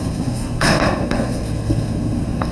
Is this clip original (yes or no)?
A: no